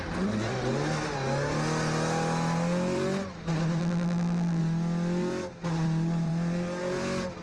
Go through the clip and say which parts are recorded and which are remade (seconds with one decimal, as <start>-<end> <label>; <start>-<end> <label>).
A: 0.0-3.8 recorded; 3.8-4.6 remade; 4.6-7.4 recorded